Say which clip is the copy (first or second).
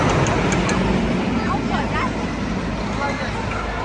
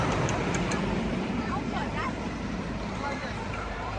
second